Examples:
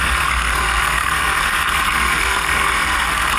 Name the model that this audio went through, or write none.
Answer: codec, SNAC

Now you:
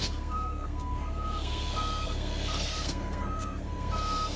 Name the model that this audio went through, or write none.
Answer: codec, SNAC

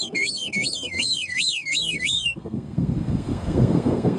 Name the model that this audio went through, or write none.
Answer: codec, SNAC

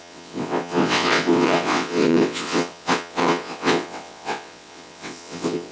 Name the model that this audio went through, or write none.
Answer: vocoder, WaveNeXt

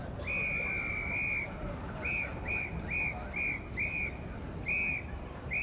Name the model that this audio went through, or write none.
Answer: none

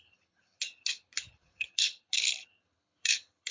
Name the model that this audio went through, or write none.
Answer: codec, HILCodec